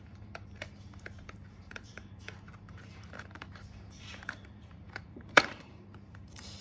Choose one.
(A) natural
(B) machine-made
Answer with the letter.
B